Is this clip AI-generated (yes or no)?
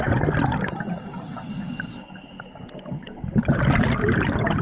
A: no